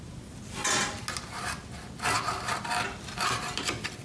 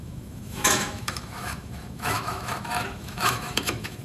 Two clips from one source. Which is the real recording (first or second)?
first